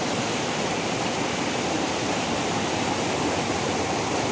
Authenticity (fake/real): fake